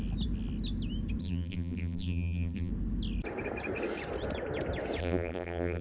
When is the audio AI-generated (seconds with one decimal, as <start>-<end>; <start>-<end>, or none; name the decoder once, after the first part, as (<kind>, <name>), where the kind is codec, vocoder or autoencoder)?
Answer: 1.2-2.7 (vocoder, BigVGAN v2); 5.0-5.8

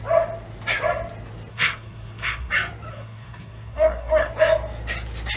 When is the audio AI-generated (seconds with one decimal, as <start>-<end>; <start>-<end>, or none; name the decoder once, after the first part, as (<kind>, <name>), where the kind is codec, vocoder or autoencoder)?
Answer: 1.5-2.5 (codec, SNAC); 2.9-4.3

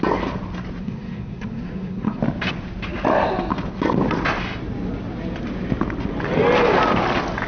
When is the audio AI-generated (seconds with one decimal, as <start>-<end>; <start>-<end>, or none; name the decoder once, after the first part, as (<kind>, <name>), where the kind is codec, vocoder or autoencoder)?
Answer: 0.8-2.2 (codec, SNAC)

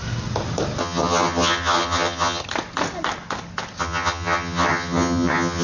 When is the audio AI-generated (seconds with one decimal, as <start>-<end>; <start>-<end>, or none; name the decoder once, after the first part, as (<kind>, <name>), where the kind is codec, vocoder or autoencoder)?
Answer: 0.8-2.4 (vocoder, HiFi-GAN); 3.8-5.6

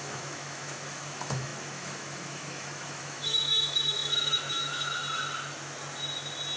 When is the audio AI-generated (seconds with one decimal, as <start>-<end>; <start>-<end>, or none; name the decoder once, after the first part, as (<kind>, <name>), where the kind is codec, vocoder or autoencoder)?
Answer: 0.0-5.0 (autoencoder, DAC-VAE)

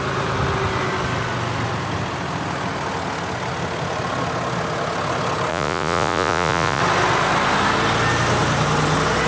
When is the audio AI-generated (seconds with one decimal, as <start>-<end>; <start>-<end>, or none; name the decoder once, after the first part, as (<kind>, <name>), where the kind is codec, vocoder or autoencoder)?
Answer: 5.5-6.8 (vocoder, Vocos)

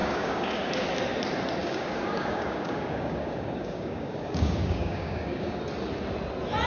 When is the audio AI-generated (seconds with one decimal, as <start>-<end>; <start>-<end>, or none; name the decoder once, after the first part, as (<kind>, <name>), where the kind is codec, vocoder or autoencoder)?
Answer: 0.0-0.7 (codec, DAC); 1.6-5.6

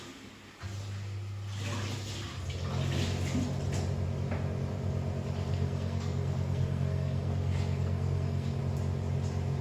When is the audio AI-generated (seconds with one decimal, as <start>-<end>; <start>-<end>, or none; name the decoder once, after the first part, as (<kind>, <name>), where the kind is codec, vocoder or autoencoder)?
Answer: 5.5-8.6 (codec, SNAC)